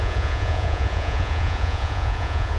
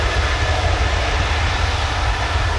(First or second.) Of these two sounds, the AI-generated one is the first